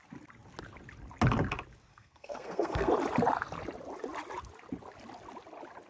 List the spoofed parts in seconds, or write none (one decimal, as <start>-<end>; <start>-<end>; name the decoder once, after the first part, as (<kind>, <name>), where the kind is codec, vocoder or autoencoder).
1.9-2.9 (codec, SNAC)